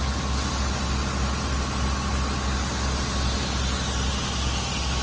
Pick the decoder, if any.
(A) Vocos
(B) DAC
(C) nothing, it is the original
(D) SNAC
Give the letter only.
C